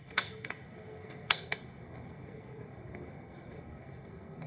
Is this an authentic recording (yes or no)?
no